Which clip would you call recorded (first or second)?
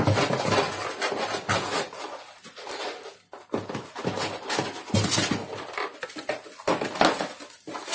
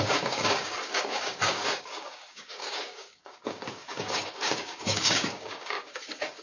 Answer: first